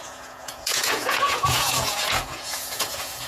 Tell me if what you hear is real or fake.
fake